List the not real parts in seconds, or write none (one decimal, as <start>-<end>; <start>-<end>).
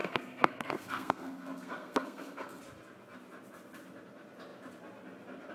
0.0-2.6